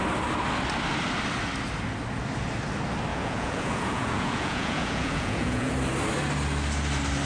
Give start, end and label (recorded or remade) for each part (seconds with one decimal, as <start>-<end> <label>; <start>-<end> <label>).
0.0-3.1 recorded; 3.1-5.7 remade; 5.7-7.3 recorded